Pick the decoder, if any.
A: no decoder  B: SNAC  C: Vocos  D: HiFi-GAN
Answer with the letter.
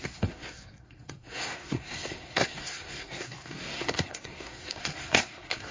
B